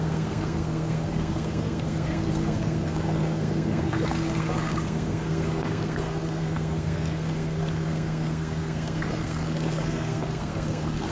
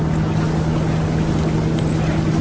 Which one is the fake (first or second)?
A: first